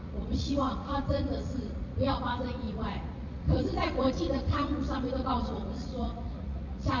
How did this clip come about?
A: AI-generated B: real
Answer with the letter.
A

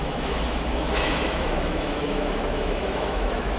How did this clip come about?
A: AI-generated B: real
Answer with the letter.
A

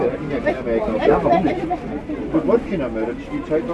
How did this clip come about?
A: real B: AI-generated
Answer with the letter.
A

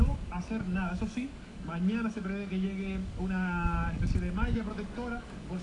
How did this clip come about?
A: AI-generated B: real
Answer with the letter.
A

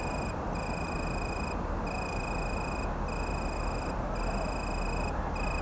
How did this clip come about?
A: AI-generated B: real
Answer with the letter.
B